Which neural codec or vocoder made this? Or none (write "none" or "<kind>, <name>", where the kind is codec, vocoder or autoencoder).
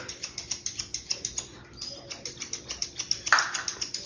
none